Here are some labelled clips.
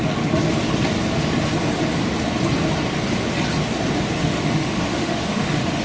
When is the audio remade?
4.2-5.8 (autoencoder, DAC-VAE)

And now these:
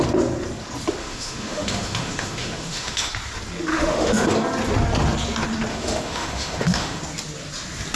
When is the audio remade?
1.0-3.1 (autoencoder, DAC-VAE); 3.7-4.3; 5.7-7.0

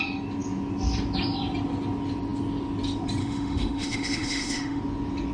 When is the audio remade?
3.2-4.8 (autoencoder, DAC-VAE)

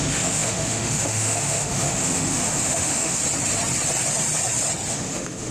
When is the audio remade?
0.0-3.2 (autoencoder, DAC-VAE); 4.9-5.5

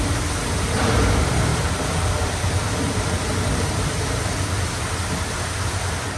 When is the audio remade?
none

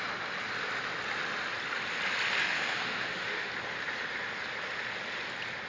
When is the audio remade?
2.4-3.5 (autoencoder, DAC-VAE)